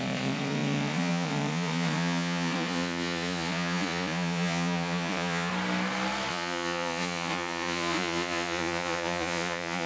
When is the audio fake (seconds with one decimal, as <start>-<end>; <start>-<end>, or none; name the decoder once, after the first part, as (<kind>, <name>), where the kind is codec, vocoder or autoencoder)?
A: 0.0-5.5 (vocoder, Vocos); 6.3-9.9